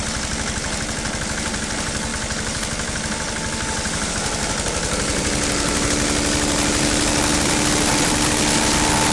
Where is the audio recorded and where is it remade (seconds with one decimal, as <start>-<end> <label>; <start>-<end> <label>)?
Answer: 0.0-9.1 recorded